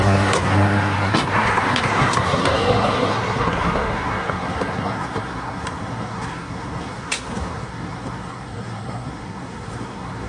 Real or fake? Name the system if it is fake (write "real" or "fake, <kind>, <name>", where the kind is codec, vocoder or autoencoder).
fake, codec, SNAC